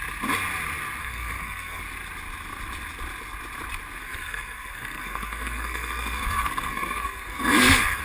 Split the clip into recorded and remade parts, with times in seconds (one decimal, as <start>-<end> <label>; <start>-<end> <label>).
0.0-1.0 recorded; 1.0-1.8 remade; 1.8-4.0 recorded; 4.0-8.0 remade